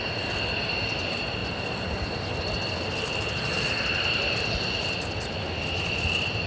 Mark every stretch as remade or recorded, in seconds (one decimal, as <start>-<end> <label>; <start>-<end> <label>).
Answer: 0.0-6.5 recorded